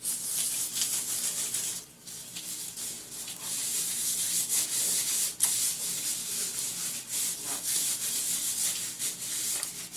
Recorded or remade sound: recorded